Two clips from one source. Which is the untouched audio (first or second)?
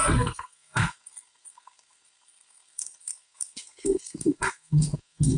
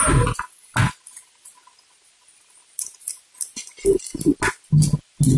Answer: second